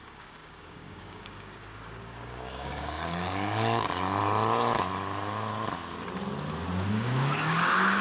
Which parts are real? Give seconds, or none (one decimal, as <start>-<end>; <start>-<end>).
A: 4.2-6.9